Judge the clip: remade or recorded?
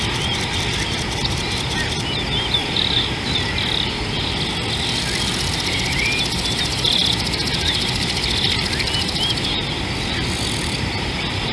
recorded